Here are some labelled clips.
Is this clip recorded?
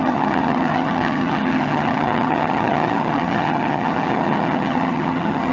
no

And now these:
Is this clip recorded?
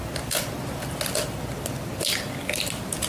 yes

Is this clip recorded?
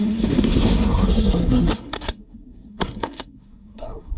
no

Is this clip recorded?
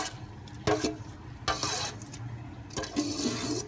yes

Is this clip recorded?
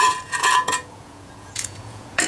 no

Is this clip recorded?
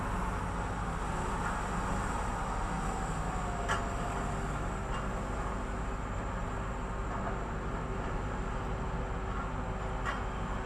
yes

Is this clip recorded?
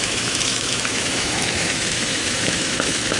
no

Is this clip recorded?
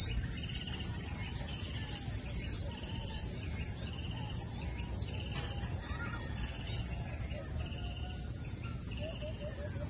yes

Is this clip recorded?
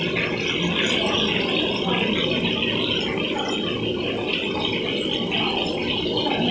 yes